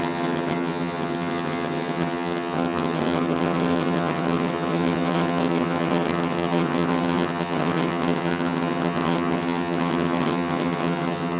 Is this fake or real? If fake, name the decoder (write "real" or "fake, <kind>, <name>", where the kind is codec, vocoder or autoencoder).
fake, vocoder, HiFi-GAN